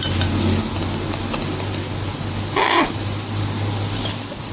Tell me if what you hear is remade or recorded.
recorded